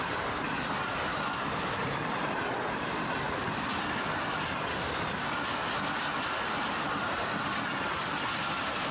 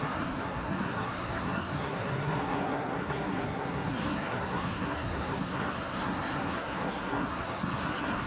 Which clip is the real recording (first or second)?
first